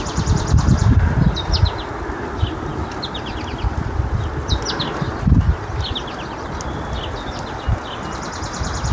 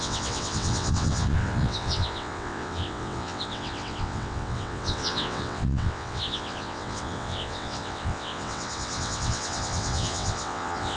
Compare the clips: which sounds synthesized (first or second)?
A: second